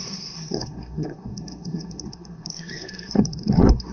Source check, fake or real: fake